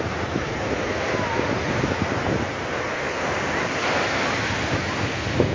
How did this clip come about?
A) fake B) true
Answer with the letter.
B